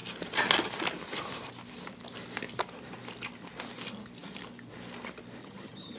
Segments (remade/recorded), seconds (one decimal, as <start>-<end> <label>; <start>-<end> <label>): 0.0-5.4 recorded; 5.4-6.0 remade